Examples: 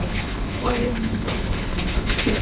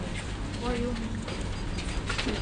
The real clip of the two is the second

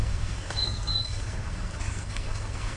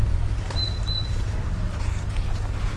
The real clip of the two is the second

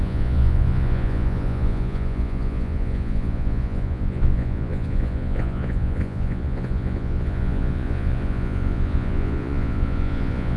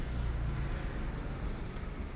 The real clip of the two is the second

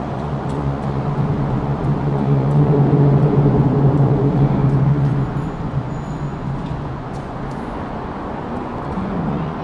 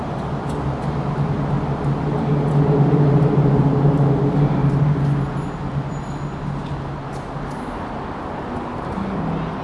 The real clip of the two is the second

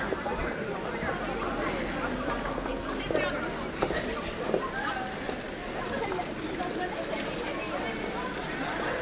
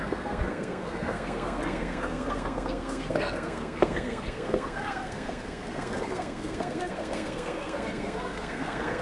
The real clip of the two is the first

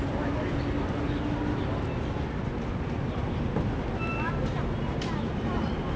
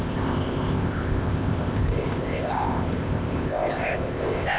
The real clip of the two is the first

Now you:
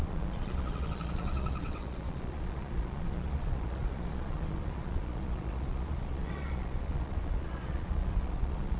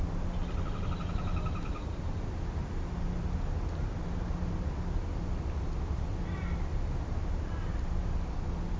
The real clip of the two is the second